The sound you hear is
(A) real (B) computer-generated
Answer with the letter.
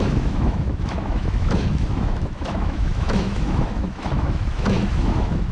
B